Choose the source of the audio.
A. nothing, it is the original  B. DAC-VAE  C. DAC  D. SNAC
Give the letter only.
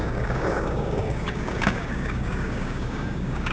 C